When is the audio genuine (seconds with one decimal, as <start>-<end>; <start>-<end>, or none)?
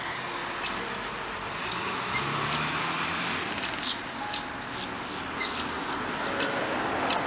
0.0-7.3